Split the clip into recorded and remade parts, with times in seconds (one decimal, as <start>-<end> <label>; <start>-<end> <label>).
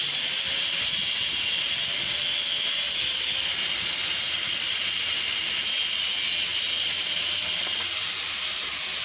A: 0.0-9.0 recorded